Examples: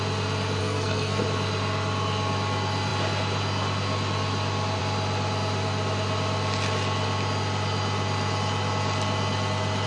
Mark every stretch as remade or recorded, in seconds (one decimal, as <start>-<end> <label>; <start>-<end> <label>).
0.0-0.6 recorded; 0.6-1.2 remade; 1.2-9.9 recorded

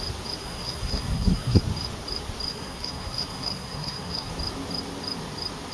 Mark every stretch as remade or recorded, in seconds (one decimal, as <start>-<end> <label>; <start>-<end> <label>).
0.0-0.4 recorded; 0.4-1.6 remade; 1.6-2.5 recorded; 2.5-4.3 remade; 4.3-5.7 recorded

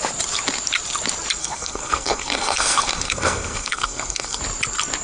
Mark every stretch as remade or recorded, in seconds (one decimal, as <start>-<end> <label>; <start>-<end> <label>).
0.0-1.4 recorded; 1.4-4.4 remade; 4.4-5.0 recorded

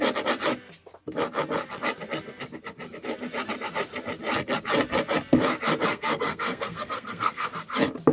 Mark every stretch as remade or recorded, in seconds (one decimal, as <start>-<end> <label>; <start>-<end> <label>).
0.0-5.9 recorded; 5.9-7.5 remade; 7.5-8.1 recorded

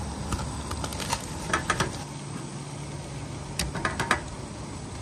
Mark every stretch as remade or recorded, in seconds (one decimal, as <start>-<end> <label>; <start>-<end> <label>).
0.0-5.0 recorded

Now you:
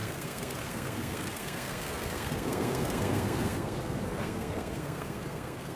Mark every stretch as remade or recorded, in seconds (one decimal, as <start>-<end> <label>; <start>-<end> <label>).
0.0-5.8 remade